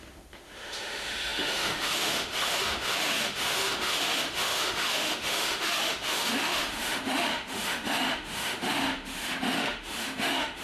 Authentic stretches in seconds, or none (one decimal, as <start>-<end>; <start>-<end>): none